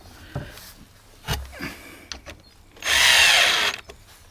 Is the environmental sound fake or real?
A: real